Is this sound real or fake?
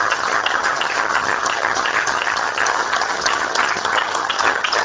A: fake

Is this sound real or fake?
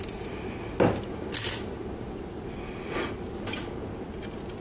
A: real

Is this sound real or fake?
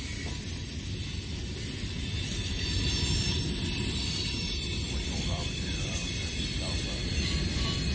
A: real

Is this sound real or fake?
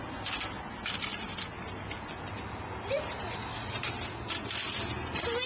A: real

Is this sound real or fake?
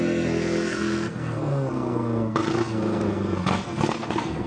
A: fake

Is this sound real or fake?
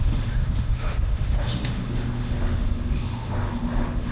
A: fake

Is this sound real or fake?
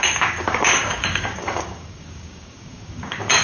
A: fake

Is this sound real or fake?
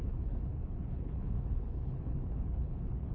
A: fake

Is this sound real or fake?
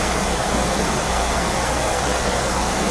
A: fake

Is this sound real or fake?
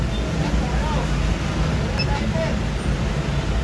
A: real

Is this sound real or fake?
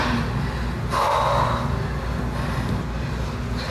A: real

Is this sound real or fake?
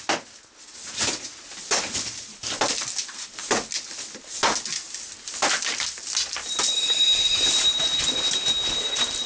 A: real